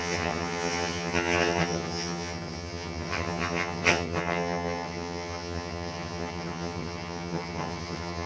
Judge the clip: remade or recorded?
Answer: remade